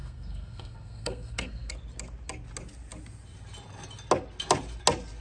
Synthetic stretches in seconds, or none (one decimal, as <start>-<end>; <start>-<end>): 0.0-1.7

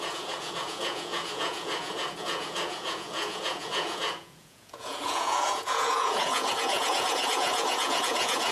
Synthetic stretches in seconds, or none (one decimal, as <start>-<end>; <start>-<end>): 0.0-8.5

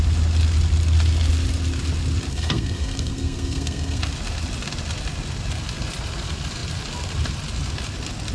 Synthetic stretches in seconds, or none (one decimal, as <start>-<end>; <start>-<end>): 2.3-4.0

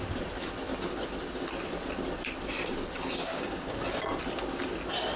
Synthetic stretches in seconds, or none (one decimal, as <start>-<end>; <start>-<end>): 3.3-3.9

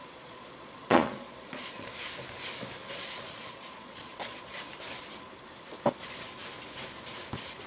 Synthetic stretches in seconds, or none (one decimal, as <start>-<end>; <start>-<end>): 0.0-1.9; 2.8-4.6

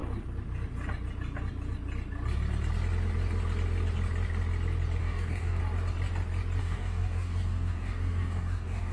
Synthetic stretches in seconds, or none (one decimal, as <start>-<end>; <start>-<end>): 5.0-5.6; 6.6-8.9

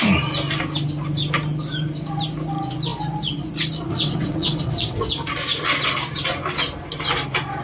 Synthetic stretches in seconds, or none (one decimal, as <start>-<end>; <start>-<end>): 3.9-5.1

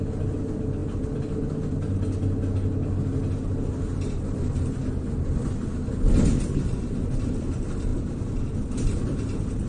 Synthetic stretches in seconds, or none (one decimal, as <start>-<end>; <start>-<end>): none